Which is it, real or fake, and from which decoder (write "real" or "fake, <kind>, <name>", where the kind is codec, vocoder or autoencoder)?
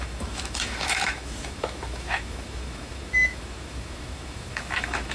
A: fake, autoencoder, DAC-VAE